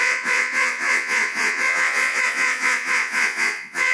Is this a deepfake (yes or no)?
yes